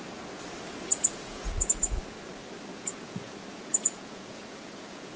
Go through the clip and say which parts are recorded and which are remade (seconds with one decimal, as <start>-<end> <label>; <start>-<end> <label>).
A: 0.0-0.9 recorded; 0.9-2.0 remade; 2.0-2.7 recorded; 2.7-5.2 remade